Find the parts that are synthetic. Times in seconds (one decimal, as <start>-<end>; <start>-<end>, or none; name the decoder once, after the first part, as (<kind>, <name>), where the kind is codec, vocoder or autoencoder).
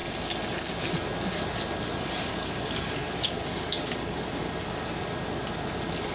2.3-5.0 (codec, DAC)